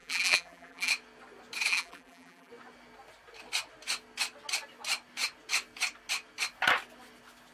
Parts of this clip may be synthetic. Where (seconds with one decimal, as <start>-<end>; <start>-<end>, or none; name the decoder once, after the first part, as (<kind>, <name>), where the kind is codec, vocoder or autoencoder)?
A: 0.0-0.9 (vocoder, BigVGAN v2); 1.7-2.5